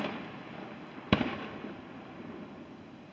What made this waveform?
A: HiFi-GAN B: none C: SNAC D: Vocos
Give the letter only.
B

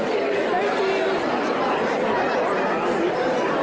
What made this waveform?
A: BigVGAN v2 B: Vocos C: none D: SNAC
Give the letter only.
C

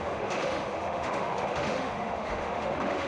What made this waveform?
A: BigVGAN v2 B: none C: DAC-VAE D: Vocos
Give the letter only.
C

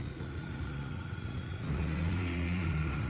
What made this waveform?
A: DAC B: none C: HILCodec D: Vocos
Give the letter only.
D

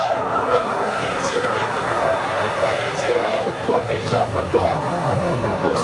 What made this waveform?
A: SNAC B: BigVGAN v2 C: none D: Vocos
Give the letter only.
A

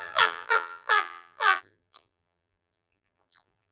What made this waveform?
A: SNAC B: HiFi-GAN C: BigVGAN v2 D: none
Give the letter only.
C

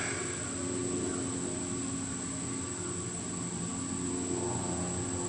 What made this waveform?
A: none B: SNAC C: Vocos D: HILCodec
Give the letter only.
A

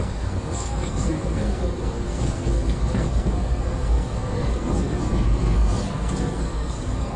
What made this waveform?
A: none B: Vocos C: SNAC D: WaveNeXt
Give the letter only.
C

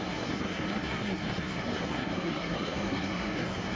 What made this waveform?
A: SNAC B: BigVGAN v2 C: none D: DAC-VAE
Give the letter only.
A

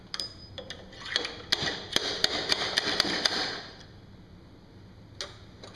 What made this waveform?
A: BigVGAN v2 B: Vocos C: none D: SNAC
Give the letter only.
C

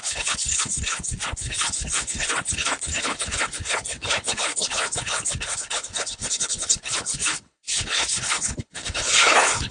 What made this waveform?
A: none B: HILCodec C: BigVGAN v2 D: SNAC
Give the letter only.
B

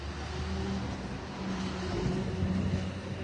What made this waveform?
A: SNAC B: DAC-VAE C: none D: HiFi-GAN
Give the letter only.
C